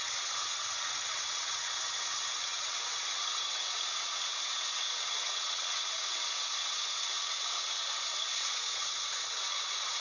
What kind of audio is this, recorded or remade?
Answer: remade